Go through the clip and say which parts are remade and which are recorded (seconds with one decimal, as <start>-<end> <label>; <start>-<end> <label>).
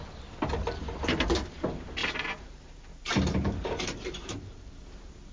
0.0-2.0 recorded; 2.0-5.3 remade